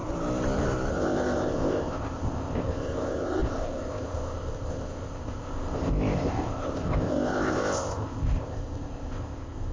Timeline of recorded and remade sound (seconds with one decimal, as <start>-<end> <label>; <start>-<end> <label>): 0.0-0.9 recorded; 0.9-9.7 remade